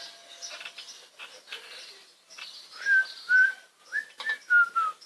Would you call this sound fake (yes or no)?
no